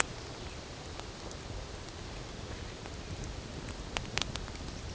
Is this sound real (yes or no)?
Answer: yes